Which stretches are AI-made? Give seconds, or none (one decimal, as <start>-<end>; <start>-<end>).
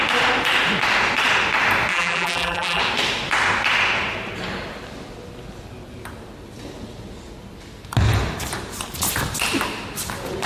1.9-2.8